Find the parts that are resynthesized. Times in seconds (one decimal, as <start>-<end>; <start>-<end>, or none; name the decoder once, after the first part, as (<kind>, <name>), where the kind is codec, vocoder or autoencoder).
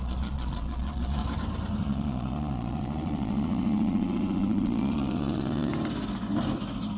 0.0-1.2 (vocoder, Vocos); 1.8-5.7